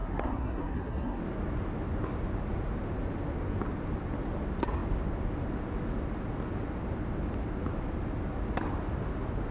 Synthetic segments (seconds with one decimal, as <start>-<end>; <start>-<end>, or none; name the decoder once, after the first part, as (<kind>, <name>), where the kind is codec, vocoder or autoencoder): 0.0-1.2 (codec, SNAC)

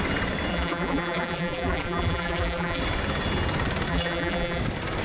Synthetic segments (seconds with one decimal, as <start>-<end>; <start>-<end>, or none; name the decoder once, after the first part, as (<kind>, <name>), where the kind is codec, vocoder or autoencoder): 0.5-2.8 (vocoder, BigVGAN v2); 3.9-4.6